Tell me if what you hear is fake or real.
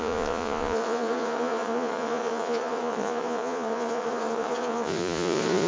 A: fake